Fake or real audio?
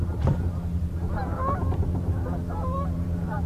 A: fake